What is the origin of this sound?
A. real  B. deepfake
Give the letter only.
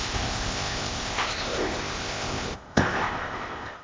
B